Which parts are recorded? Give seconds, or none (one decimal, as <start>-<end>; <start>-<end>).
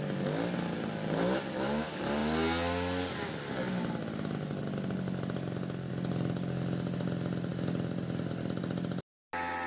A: 0.0-9.7